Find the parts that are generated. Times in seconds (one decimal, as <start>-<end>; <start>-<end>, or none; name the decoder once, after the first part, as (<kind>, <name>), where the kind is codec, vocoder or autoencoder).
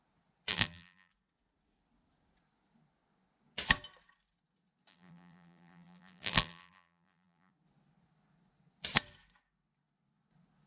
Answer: 0.5-1.1 (vocoder, BigVGAN v2); 4.9-7.5